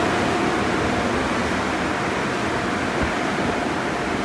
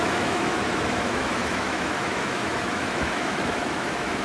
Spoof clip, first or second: second